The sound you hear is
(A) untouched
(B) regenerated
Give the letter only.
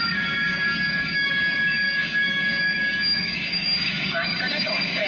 B